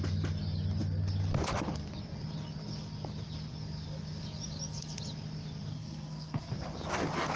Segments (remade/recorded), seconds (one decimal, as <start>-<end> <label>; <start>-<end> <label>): 0.0-5.7 recorded; 5.7-6.5 remade; 6.5-7.4 recorded